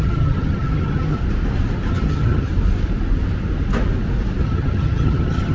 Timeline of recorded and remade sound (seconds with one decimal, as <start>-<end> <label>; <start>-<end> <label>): 0.0-1.2 remade; 1.2-1.9 recorded; 1.9-2.5 remade; 2.5-4.4 recorded; 4.4-5.5 remade